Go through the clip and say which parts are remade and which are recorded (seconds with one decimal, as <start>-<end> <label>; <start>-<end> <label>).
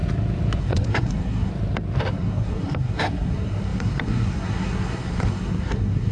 0.0-0.6 recorded; 0.6-1.5 remade; 1.5-2.1 recorded; 2.1-6.1 remade